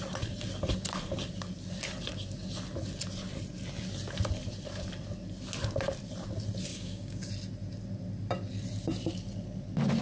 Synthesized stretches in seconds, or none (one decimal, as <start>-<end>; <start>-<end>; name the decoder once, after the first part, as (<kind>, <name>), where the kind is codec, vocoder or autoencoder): 6.7-7.3 (codec, DAC)